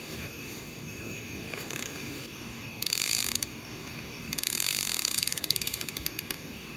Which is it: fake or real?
fake